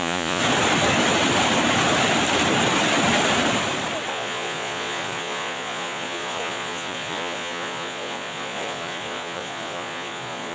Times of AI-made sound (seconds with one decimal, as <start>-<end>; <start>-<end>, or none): 0.0-0.4; 4.1-10.5